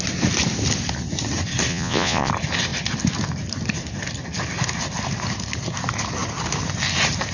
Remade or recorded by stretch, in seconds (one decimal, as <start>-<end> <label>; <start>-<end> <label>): 0.0-1.7 recorded; 1.7-2.3 remade; 2.3-7.3 recorded